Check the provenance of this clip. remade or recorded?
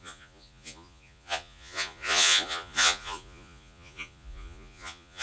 remade